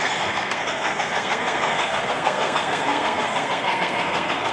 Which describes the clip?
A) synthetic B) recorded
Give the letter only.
A